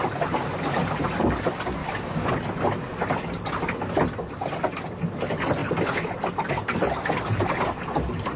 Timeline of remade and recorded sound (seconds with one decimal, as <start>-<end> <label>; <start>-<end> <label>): 0.0-1.8 recorded; 1.8-2.3 remade; 2.3-8.4 recorded